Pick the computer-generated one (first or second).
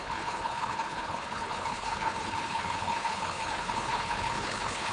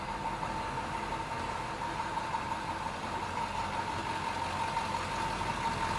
first